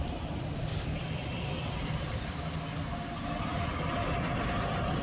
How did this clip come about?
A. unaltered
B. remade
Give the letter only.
A